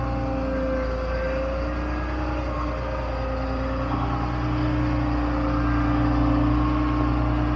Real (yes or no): yes